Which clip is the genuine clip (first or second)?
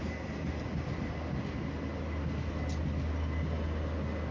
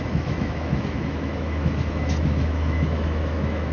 first